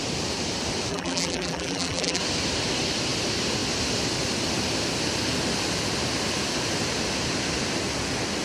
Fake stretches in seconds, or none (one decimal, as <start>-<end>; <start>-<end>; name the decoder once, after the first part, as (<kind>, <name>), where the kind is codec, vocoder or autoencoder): 0.9-2.2 (vocoder, BigVGAN v2)